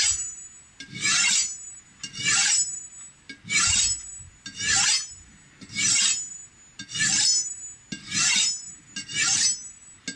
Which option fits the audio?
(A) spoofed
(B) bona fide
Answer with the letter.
B